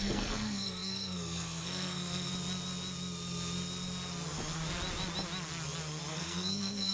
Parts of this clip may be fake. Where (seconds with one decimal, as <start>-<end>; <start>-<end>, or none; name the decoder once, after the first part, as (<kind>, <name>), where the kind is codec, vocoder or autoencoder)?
0.0-2.3 (codec, SNAC); 6.1-6.9